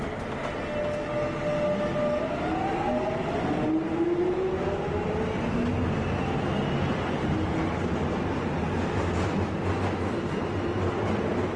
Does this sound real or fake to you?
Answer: real